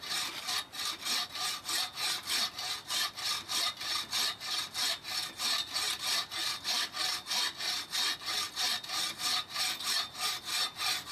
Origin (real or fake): real